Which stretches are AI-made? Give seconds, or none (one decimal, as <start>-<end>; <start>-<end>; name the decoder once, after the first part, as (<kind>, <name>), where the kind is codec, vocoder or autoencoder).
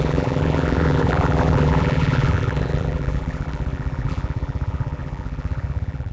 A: 0.0-6.1 (vocoder, BigVGAN v2)